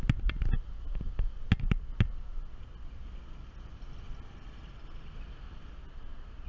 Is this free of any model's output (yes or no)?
yes